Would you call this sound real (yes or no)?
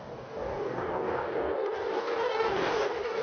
no